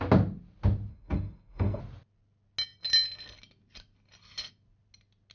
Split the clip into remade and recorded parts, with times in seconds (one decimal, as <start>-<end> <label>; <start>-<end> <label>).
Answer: 0.0-0.9 recorded; 0.9-1.8 remade; 1.8-5.3 recorded